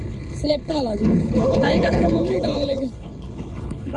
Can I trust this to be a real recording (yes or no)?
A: no